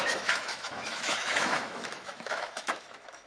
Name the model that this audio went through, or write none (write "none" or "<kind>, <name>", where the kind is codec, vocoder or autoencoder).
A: autoencoder, DAC-VAE